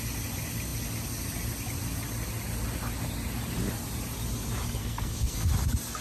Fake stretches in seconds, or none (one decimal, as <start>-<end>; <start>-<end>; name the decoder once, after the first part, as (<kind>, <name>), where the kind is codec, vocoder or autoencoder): 4.8-5.5 (codec, SNAC)